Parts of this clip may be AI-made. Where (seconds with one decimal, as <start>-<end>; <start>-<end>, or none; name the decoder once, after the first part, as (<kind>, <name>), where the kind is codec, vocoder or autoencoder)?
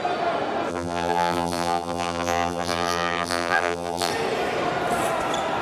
0.7-4.1 (vocoder, BigVGAN v2)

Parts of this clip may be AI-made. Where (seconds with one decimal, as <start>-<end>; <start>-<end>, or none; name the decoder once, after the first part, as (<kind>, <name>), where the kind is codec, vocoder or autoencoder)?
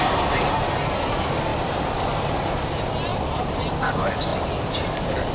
1.5-2.5 (vocoder, BigVGAN v2); 3.1-3.6; 4.3-5.3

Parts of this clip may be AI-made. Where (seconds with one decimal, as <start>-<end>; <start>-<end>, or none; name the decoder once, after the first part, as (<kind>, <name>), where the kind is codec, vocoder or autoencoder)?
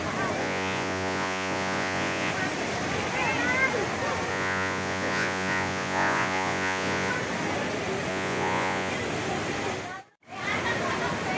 0.4-2.3 (vocoder, Vocos); 4.3-7.1; 8.1-8.9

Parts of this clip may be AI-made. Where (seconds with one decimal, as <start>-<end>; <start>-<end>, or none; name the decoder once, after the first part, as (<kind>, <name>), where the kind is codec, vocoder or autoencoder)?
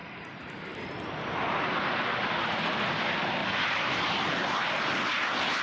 0.0-1.7 (vocoder, BigVGAN v2); 3.4-4.3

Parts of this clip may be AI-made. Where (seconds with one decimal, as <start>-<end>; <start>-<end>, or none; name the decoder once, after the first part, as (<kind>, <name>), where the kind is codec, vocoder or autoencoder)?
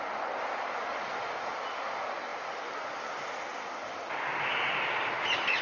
2.3-2.9 (vocoder, BigVGAN v2); 3.8-5.0